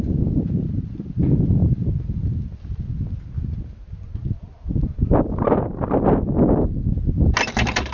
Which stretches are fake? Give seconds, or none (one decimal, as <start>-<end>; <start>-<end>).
none